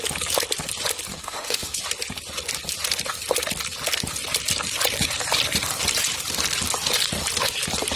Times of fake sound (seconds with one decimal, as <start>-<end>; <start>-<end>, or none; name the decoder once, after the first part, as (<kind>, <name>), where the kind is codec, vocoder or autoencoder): 1.1-1.8 (autoencoder, DAC-VAE)